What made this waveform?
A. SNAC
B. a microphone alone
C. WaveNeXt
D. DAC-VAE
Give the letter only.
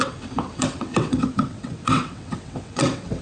C